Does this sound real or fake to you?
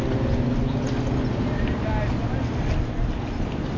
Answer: real